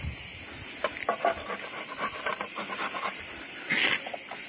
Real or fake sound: real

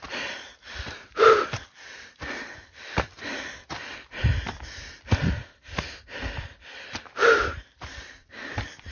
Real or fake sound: fake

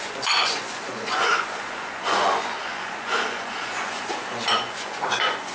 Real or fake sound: fake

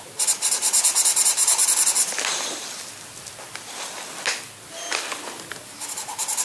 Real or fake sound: real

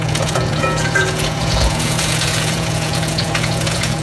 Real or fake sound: fake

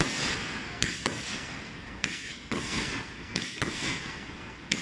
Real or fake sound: fake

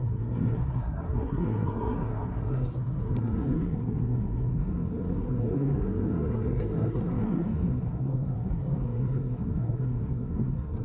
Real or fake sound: fake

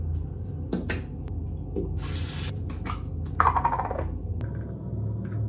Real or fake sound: real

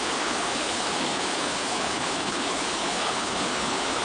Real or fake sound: fake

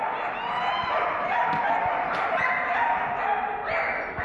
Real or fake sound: real